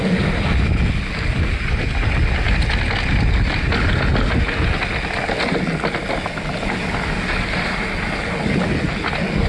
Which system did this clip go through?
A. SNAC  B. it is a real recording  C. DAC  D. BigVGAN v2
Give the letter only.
B